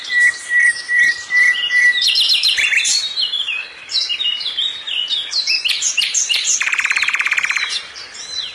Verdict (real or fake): fake